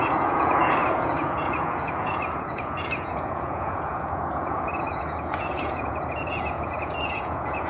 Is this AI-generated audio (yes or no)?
yes